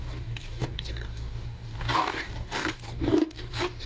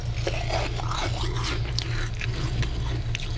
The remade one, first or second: first